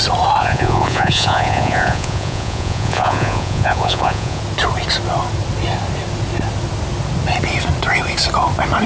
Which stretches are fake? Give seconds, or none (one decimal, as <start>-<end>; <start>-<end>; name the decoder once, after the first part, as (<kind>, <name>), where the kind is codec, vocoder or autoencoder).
0.4-4.4 (vocoder, Vocos)